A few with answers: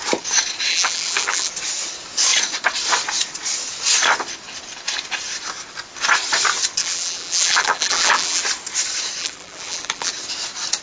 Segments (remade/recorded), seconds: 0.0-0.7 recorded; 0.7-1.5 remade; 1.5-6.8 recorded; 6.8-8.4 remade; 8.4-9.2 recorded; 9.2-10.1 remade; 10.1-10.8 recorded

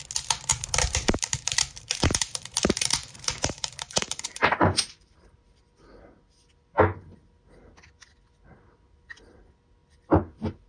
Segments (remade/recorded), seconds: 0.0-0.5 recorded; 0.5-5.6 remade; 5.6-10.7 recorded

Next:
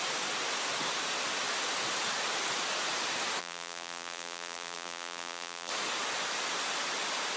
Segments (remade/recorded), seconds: 0.0-3.4 recorded; 3.4-5.7 remade; 5.7-7.4 recorded

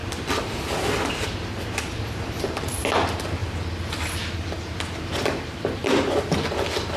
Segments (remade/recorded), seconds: 0.0-2.8 remade; 2.8-3.4 recorded; 3.4-3.9 remade; 3.9-5.8 recorded; 5.8-7.0 remade